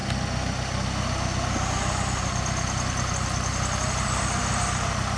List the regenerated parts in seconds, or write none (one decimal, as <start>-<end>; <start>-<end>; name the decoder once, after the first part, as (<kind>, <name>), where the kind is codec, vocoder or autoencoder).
none